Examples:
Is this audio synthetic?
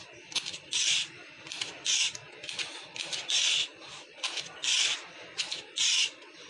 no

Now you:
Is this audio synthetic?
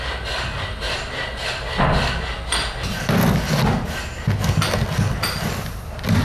no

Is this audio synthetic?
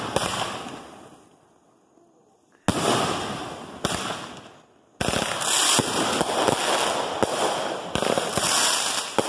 no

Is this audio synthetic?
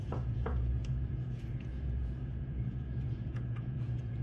yes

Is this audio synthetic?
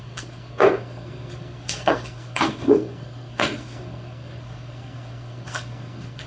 yes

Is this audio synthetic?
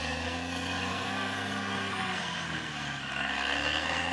yes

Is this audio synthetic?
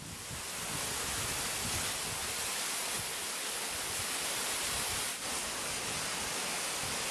no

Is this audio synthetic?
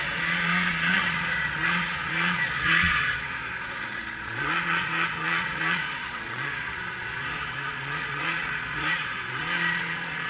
yes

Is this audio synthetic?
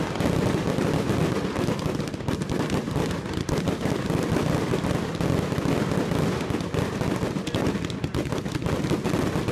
no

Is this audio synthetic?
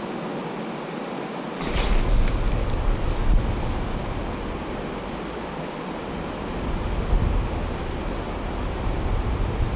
no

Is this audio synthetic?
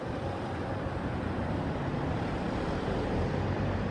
yes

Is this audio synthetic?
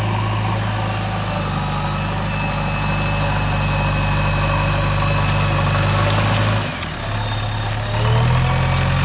no